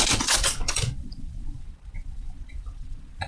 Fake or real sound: fake